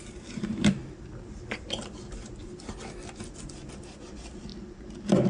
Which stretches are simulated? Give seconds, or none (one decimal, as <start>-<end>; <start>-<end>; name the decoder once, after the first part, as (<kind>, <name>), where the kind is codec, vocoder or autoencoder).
none